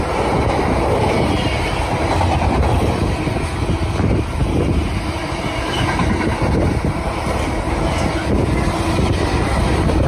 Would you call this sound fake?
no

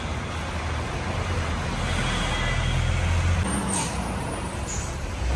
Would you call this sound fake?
no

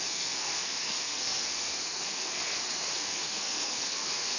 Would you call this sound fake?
yes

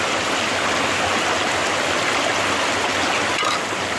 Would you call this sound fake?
no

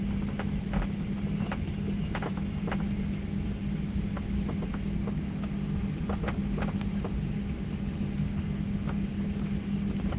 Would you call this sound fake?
no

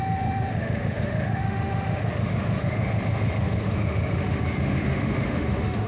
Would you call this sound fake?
yes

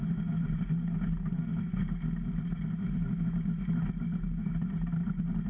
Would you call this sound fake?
no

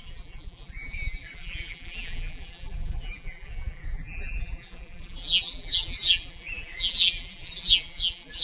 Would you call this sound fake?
yes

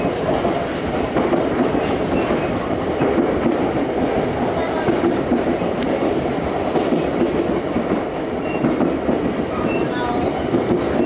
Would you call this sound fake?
no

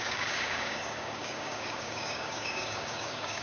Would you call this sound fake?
yes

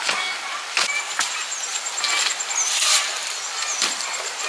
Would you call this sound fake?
no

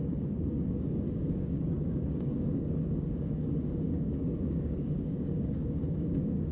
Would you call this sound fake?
yes